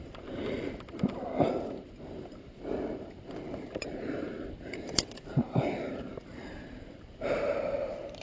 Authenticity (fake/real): fake